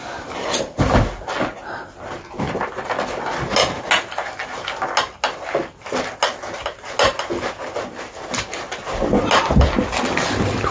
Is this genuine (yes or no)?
yes